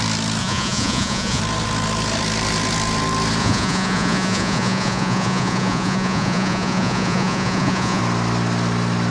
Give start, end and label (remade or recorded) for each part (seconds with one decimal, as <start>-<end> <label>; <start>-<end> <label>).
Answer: 0.0-0.4 recorded; 0.4-1.4 remade; 1.4-3.4 recorded; 3.4-8.0 remade; 8.0-9.1 recorded